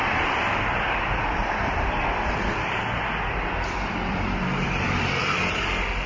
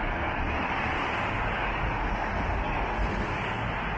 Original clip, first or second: second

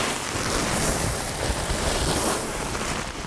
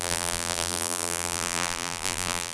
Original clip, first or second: first